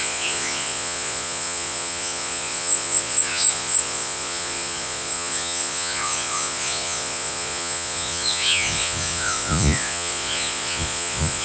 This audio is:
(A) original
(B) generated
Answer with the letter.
B